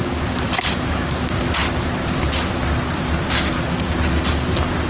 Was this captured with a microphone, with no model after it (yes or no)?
yes